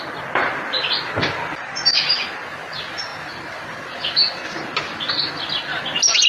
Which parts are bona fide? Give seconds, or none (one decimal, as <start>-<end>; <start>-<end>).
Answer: 0.0-6.3